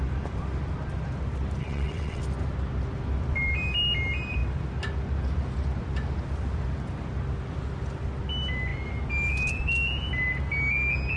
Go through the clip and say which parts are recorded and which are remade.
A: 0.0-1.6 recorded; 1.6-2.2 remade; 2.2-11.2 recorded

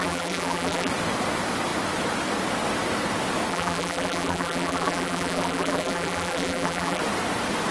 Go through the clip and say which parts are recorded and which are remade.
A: 0.0-0.9 remade; 0.9-3.5 recorded; 3.5-7.0 remade; 7.0-7.7 recorded

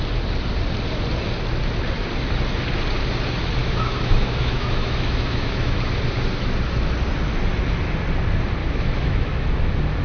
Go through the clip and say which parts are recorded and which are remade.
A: 0.0-3.6 recorded; 3.6-5.8 remade; 5.8-8.6 recorded; 8.6-9.4 remade; 9.4-10.0 recorded

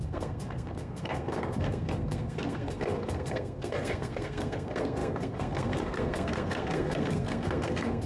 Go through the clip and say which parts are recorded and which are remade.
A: 0.0-8.1 remade

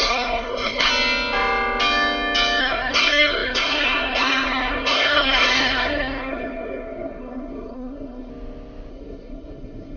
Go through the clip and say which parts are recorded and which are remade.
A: 0.0-0.9 remade; 0.9-2.6 recorded; 2.6-8.3 remade; 8.3-8.9 recorded; 8.9-10.0 remade

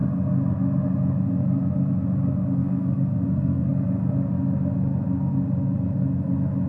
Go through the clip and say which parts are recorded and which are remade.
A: 0.0-2.6 recorded; 2.6-3.7 remade; 3.7-6.7 recorded